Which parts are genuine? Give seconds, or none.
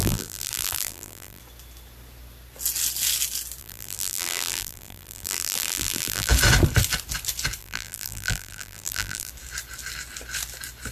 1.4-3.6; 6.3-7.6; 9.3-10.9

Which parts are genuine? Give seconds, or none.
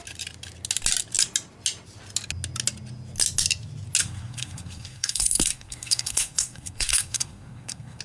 0.0-4.0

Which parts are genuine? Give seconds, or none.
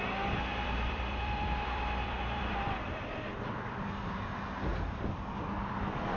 0.0-0.5; 3.9-4.7; 5.7-6.2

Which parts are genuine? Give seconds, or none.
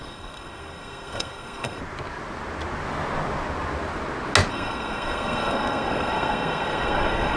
1.8-4.5